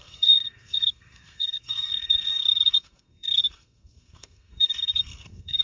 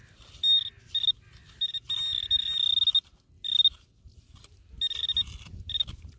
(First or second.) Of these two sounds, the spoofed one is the first